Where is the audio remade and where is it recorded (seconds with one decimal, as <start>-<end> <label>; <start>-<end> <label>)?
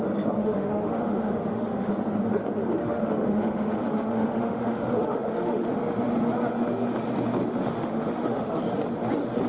0.0-0.4 recorded; 0.4-1.9 remade; 1.9-2.8 recorded; 2.8-5.7 remade; 5.7-7.4 recorded; 7.4-8.6 remade; 8.6-9.5 recorded